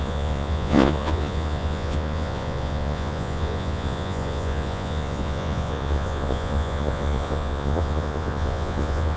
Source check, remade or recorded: remade